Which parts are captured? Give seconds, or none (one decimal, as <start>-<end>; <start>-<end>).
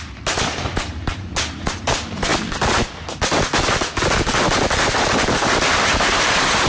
2.3-4.8